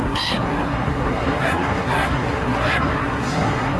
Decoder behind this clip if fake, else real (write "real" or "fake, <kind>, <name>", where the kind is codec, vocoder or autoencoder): fake, codec, SNAC